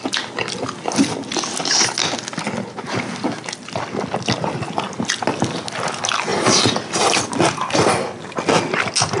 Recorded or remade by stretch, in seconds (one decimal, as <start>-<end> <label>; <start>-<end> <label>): 0.0-9.2 recorded

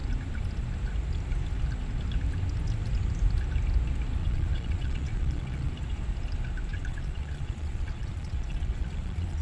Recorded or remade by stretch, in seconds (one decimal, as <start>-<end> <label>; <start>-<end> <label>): 0.0-4.2 recorded; 4.2-5.7 remade; 5.7-6.7 recorded; 6.7-9.4 remade

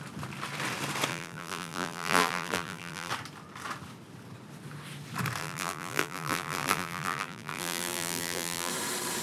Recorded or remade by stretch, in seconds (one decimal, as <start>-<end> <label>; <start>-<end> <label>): 0.0-1.1 recorded; 1.1-3.1 remade; 3.1-5.4 recorded; 5.4-8.7 remade; 8.7-9.2 recorded

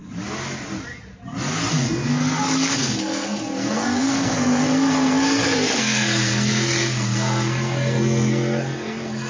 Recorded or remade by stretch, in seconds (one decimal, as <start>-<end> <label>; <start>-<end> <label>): 0.0-1.7 recorded; 1.7-9.3 remade

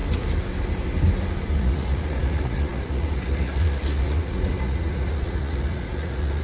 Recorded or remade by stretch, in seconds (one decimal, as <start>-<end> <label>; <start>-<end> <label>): 0.0-1.5 recorded; 1.5-6.4 remade

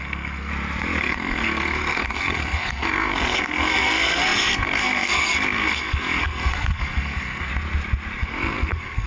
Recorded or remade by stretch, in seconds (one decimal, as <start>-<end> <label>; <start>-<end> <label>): 0.0-0.5 remade; 0.5-1.0 recorded; 1.0-7.5 remade; 7.5-8.2 recorded; 8.2-9.1 remade

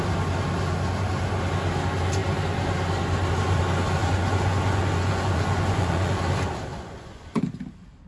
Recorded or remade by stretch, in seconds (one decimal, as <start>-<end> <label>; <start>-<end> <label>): 0.0-4.0 recorded; 4.0-6.2 remade; 6.2-6.7 recorded; 6.7-7.4 remade; 7.4-8.1 recorded

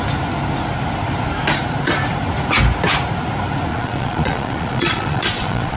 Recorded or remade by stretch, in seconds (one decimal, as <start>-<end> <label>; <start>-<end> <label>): 0.0-3.7 recorded; 3.7-5.8 remade